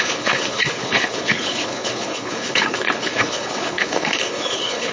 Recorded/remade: remade